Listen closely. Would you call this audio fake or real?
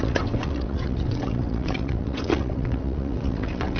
fake